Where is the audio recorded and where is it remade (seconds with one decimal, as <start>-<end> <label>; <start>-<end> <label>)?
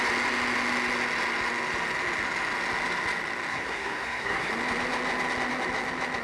0.0-3.5 recorded; 3.5-4.5 remade; 4.5-6.2 recorded